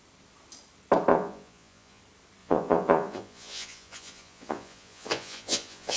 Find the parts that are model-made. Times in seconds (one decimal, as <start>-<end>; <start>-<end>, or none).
1.1-2.0; 2.4-6.0